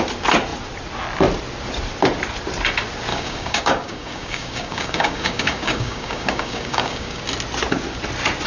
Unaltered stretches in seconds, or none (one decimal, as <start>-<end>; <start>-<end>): 0.0-3.1; 7.2-8.5